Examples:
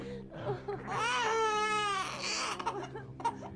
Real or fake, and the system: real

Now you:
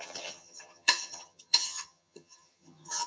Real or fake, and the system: fake, vocoder, HiFi-GAN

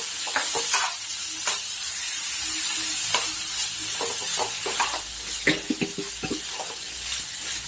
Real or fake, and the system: real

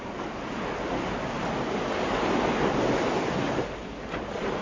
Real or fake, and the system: real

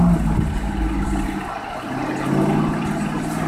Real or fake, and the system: real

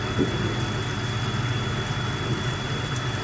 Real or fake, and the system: real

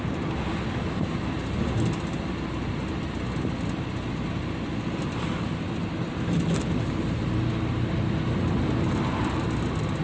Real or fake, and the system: real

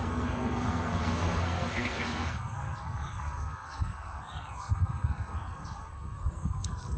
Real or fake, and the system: fake, codec, SNAC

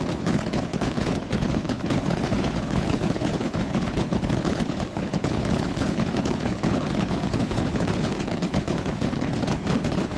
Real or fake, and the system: fake, codec, HILCodec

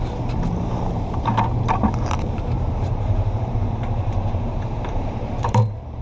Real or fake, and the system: fake, vocoder, BigVGAN v2